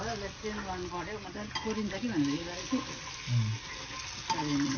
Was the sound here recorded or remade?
recorded